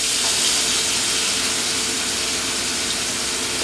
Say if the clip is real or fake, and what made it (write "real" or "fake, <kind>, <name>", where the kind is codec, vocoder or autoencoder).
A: real